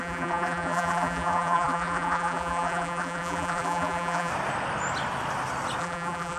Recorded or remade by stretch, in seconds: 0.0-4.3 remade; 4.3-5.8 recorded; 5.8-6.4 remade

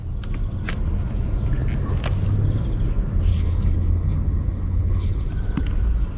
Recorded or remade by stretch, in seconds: 0.0-3.3 recorded; 3.3-5.3 remade; 5.3-6.2 recorded

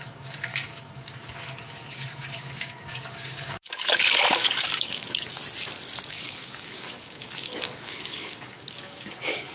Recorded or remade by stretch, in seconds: 0.0-5.4 remade; 5.4-6.1 recorded; 6.1-9.5 remade